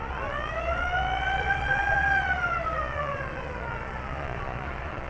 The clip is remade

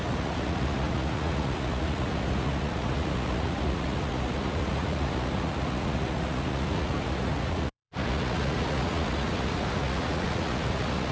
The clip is remade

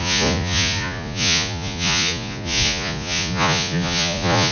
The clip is remade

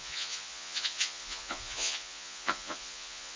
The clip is remade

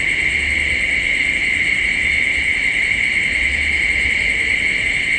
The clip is recorded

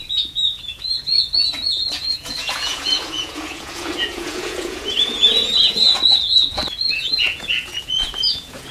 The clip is remade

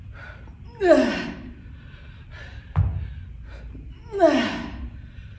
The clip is recorded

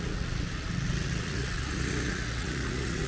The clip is remade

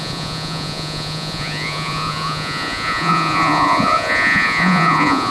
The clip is remade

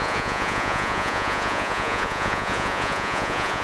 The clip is remade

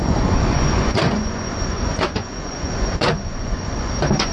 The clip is remade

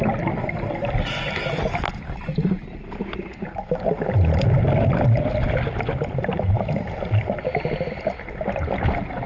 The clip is recorded